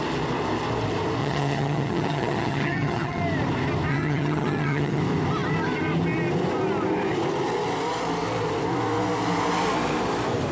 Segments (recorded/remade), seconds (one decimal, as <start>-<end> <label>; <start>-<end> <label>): 0.0-1.2 recorded; 1.2-3.2 remade; 3.2-3.9 recorded; 3.9-5.0 remade; 5.0-10.5 recorded